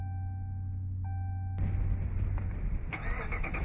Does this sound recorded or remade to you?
recorded